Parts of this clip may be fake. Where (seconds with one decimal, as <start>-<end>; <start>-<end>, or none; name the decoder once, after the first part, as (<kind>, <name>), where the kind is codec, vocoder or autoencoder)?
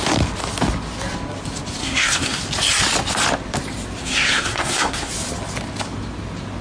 1.8-2.4 (codec, SNAC); 4.0-5.1